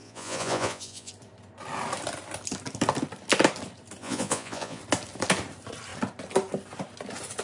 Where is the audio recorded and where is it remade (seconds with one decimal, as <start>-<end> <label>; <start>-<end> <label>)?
0.0-1.1 remade; 1.1-4.0 recorded; 4.0-4.8 remade; 4.8-7.4 recorded